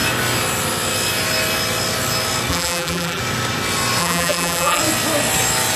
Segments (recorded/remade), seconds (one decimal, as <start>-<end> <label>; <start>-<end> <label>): 0.0-2.5 recorded; 2.5-3.2 remade; 3.2-4.0 recorded; 4.0-4.8 remade; 4.8-5.8 recorded